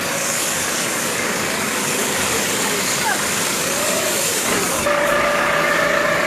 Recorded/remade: remade